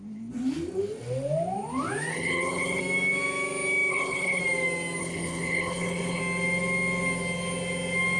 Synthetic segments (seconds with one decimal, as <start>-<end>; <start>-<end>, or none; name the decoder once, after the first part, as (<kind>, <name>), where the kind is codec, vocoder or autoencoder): 2.1-2.8 (codec, HILCodec); 3.9-4.4; 5.0-6.2